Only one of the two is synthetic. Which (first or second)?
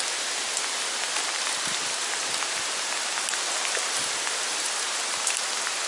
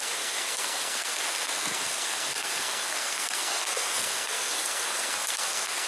second